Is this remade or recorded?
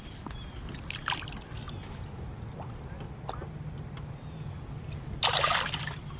recorded